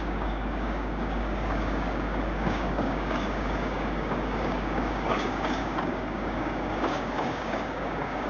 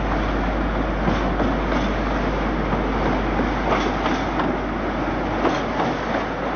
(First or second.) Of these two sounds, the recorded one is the second